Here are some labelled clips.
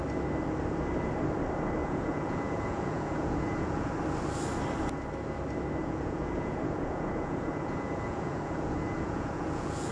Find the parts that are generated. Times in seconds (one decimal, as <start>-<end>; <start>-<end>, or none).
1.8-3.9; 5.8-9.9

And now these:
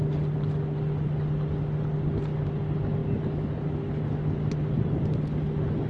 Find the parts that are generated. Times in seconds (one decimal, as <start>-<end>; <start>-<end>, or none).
none

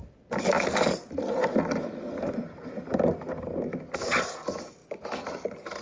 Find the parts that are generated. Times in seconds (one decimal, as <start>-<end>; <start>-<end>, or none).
none

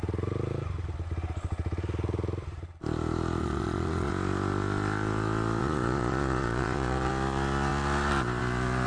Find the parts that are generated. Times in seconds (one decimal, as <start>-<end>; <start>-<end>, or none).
3.4-4.1; 5.6-7.1

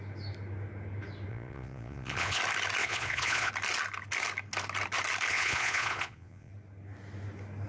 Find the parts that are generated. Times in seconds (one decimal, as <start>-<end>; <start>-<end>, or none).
1.3-2.4; 2.8-3.5; 5.3-6.5

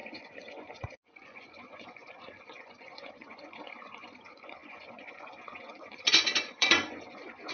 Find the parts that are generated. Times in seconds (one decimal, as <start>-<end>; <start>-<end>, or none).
0.0-7.5

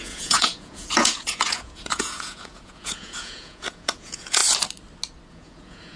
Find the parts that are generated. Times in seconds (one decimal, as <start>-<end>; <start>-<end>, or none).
0.0-4.4; 5.3-6.0

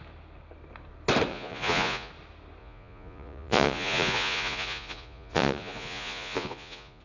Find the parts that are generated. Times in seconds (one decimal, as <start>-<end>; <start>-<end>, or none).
1.3-2.1; 2.6-7.0